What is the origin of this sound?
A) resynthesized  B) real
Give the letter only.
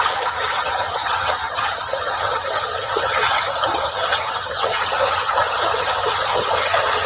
A